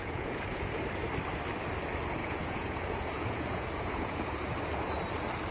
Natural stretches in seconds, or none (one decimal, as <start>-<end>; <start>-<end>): 0.7-2.2; 4.5-5.5